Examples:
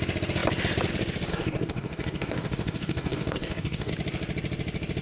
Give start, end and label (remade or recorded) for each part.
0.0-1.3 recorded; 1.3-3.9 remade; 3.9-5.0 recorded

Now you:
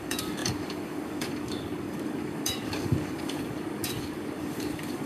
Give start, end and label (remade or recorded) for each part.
0.0-5.1 remade

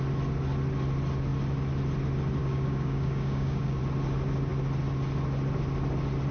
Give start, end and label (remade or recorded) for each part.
0.0-2.4 recorded; 2.4-3.8 remade; 3.8-6.3 recorded